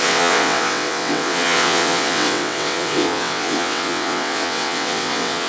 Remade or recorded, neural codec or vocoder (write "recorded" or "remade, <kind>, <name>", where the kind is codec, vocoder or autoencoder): remade, vocoder, WaveNeXt